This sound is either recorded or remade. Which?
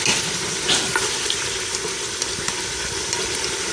recorded